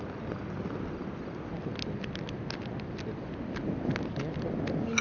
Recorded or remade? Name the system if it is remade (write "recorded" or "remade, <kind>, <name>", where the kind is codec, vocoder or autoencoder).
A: recorded